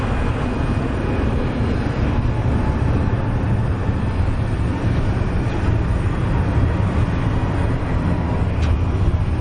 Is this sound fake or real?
real